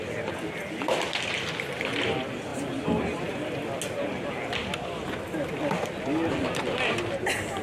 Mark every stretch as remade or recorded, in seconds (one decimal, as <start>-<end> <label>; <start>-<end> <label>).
0.0-2.5 recorded; 2.5-3.3 remade; 3.3-7.6 recorded